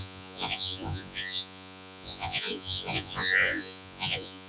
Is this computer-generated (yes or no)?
yes